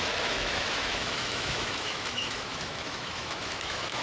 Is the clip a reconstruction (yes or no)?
yes